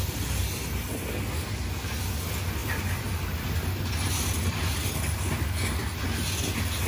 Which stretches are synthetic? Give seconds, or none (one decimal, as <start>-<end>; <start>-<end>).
none